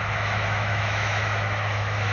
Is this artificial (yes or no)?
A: yes